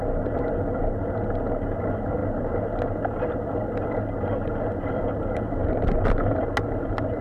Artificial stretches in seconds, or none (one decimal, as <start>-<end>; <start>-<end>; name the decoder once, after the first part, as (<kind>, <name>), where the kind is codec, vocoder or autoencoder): none